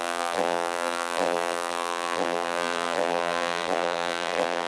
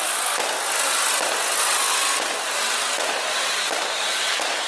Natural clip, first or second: second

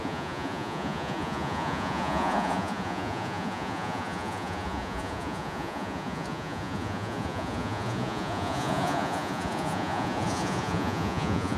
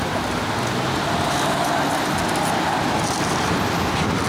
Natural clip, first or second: second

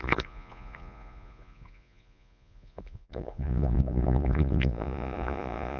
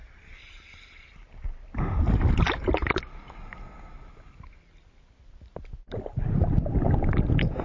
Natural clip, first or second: second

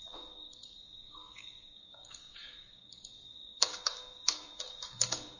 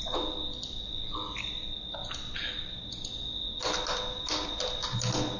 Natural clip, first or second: second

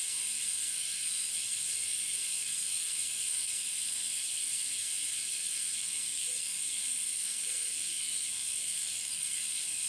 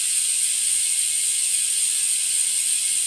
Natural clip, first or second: second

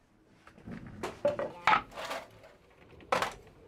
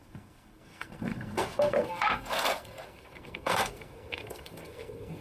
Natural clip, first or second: first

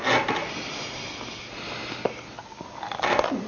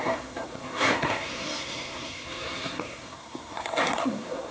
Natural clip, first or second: first